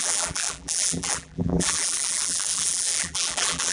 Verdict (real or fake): fake